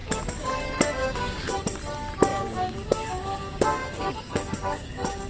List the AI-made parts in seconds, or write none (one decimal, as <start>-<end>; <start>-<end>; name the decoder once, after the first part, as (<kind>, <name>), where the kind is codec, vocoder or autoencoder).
0.0-0.5 (codec, DAC); 1.0-1.5; 2.3-5.3